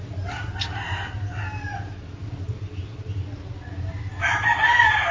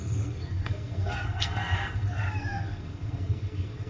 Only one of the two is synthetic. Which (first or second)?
second